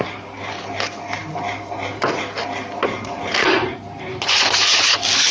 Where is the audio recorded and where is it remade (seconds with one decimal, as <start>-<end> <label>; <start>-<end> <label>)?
0.0-5.3 recorded